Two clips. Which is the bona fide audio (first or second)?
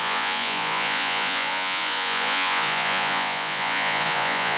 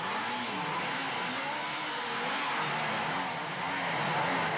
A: second